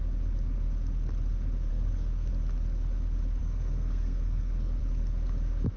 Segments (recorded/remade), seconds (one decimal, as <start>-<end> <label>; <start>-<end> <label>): 0.0-1.7 recorded; 1.7-2.3 remade; 2.3-3.4 recorded; 3.4-4.8 remade; 4.8-5.8 recorded